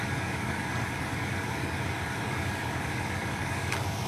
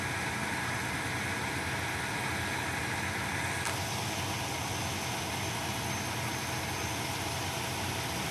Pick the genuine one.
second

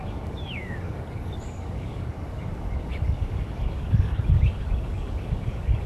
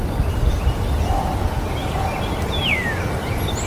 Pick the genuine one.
second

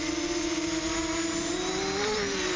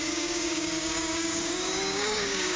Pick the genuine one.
first